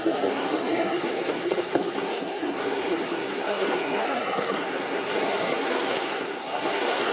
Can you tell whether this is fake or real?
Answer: fake